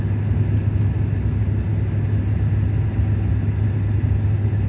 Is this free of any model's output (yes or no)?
yes